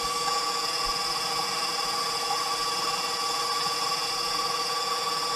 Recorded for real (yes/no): yes